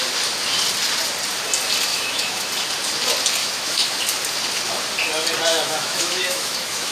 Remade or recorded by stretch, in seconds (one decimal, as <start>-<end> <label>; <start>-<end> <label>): 0.0-1.9 recorded; 1.9-2.5 remade; 2.5-3.4 recorded; 3.4-4.0 remade; 4.0-5.5 recorded; 5.5-6.9 remade